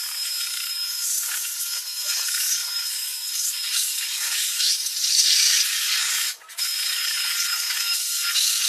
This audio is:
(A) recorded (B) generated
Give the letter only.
B